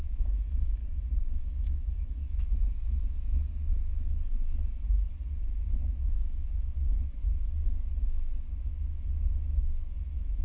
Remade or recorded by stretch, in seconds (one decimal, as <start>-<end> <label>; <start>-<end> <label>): 0.0-0.8 remade; 0.8-1.4 recorded; 1.4-3.6 remade; 3.6-6.0 recorded; 6.0-7.2 remade; 7.2-8.7 recorded; 8.7-10.4 remade